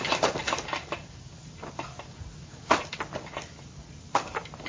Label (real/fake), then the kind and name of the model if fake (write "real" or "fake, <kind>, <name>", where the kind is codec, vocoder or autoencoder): real